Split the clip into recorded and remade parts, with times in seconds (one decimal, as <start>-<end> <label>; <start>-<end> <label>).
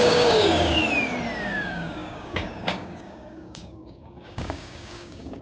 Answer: 0.0-0.8 remade; 0.8-1.4 recorded; 1.4-5.4 remade